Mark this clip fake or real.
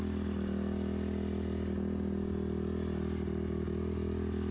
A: real